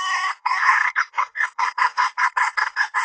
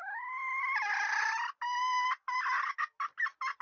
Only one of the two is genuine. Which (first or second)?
second